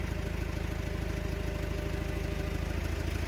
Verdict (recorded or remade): recorded